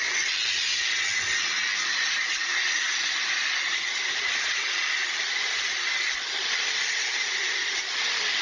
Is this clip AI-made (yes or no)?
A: no